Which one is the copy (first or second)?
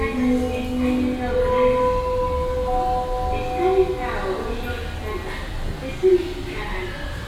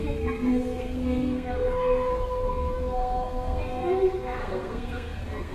second